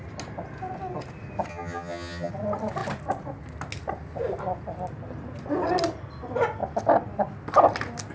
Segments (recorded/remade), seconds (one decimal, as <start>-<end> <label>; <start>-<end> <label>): 0.0-1.5 recorded; 1.5-2.3 remade; 2.3-8.1 recorded